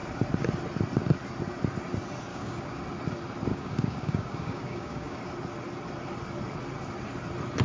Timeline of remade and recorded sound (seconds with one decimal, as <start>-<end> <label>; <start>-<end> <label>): 0.0-2.3 recorded; 2.3-2.8 remade; 2.8-3.5 recorded; 3.5-5.2 remade; 5.2-7.6 recorded